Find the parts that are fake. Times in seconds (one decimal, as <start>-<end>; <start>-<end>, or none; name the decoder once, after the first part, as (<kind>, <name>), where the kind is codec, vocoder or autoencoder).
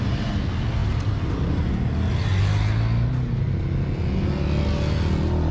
none